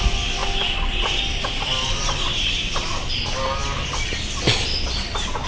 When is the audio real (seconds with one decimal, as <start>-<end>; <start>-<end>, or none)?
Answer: 0.0-5.5